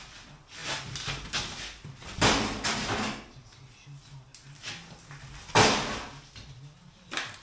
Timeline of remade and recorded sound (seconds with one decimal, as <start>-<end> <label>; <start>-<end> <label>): 0.0-7.4 recorded